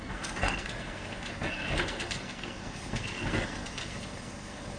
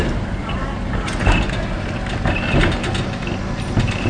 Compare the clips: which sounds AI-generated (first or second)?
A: first